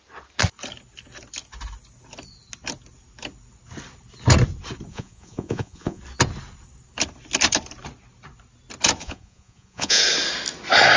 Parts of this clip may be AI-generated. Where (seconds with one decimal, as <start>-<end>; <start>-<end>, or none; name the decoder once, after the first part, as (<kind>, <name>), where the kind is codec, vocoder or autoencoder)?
4.9-6.0 (vocoder, Vocos); 9.0-10.0